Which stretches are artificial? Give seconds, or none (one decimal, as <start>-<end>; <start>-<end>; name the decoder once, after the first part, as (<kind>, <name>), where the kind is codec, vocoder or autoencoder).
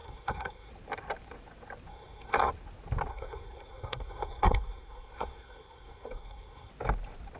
0.0-0.7 (codec, SNAC); 1.9-2.5; 3.1-6.7